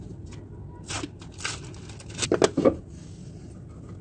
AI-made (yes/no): no